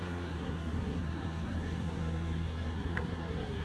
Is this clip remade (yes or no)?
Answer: yes